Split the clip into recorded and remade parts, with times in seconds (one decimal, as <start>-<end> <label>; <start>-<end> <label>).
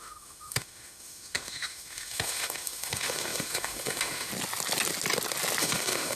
0.0-4.3 remade; 4.3-5.6 recorded; 5.6-6.2 remade